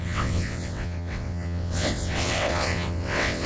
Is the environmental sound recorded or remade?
remade